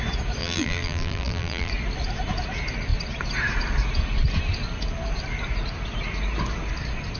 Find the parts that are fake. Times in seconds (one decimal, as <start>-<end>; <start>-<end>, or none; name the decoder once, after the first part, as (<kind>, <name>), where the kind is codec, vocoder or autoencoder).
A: 0.4-1.7 (vocoder, BigVGAN v2)